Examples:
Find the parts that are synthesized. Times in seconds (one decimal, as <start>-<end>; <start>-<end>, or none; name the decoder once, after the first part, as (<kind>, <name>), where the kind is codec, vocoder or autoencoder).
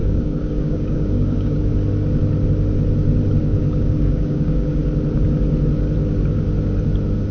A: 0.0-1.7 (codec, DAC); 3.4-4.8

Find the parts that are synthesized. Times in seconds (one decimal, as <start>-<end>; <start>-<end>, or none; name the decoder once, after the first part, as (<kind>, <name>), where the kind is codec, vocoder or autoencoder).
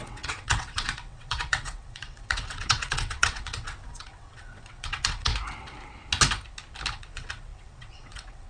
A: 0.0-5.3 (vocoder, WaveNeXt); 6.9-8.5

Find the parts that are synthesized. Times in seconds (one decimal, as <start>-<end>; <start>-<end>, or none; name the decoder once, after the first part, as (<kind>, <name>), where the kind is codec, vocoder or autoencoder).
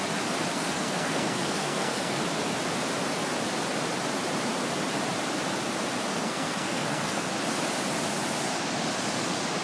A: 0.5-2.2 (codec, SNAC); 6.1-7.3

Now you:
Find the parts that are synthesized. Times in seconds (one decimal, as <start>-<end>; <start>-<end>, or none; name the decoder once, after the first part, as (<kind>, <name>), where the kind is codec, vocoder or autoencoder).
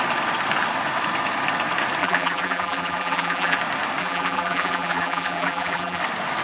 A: 2.0-3.6 (vocoder, BigVGAN v2); 4.0-6.0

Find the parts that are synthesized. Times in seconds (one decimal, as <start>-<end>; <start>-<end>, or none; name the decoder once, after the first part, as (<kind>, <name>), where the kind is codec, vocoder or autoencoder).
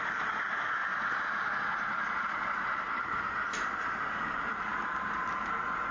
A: none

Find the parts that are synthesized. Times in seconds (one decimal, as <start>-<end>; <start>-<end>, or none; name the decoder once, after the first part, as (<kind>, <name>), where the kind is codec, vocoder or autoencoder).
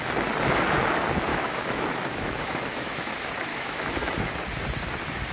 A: 1.3-3.1 (autoencoder, DAC-VAE); 3.5-4.3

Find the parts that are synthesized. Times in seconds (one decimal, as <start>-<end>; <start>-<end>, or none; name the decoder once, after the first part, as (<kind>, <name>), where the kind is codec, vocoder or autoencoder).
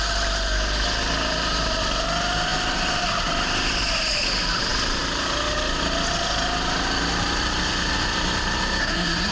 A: 8.8-9.3 (codec, SNAC)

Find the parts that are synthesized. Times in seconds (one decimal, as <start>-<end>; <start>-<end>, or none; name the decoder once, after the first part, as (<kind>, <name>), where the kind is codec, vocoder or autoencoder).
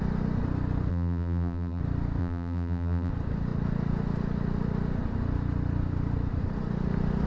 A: 0.9-1.8 (vocoder, BigVGAN v2); 2.2-3.1